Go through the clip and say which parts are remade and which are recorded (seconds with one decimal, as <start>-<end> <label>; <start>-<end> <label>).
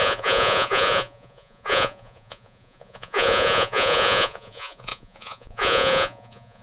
0.0-6.6 remade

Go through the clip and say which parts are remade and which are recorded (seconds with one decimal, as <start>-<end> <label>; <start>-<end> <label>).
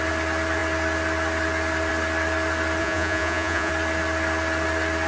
0.0-2.8 recorded; 2.8-3.7 remade; 3.7-5.1 recorded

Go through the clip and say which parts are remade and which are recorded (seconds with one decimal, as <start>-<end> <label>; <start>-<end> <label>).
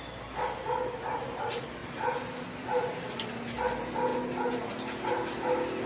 0.0-5.9 recorded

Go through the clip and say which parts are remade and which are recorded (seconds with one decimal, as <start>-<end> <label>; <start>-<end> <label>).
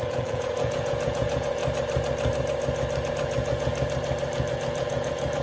0.0-1.6 remade; 1.6-3.1 recorded; 3.1-3.7 remade; 3.7-4.5 recorded; 4.5-5.4 remade